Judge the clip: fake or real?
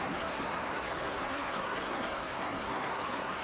fake